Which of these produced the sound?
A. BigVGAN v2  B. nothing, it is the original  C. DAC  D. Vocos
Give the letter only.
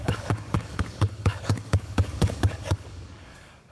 C